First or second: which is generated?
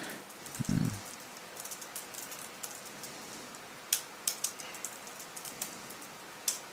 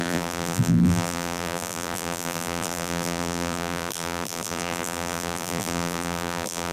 second